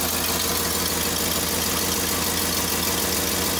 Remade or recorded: recorded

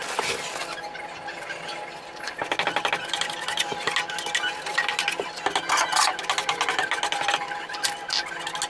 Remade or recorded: recorded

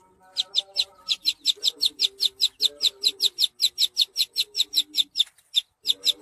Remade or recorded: recorded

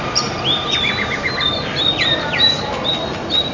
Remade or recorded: remade